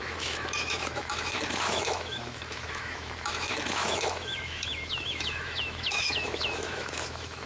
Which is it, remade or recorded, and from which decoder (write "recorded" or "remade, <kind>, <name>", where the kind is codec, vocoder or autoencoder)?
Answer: remade, autoencoder, DAC-VAE